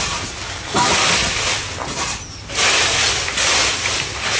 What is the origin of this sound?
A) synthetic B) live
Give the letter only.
B